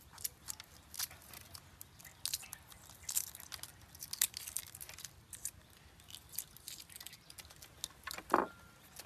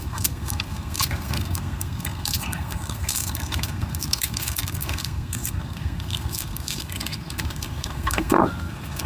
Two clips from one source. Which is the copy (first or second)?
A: second